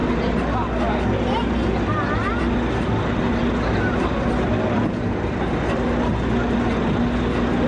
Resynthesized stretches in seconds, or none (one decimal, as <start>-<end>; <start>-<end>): none